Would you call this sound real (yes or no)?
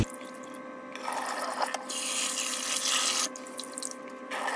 yes